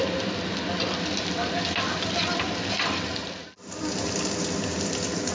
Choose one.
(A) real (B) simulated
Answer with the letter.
A